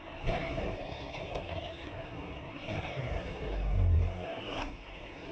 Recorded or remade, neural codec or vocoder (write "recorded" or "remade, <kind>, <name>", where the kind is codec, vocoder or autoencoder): remade, codec, SNAC